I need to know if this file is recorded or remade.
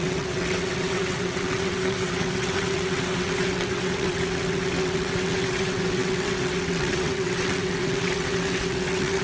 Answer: remade